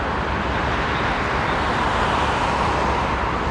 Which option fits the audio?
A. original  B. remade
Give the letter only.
A